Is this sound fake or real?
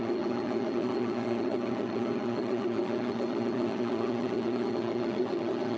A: fake